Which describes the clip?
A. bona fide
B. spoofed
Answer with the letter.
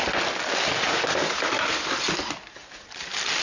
A